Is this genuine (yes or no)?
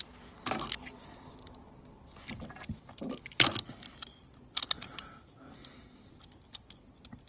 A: yes